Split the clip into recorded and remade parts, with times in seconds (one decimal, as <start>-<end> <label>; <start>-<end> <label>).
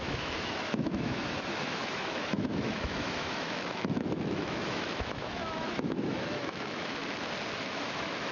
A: 0.0-7.0 remade; 7.0-7.6 recorded; 7.6-8.3 remade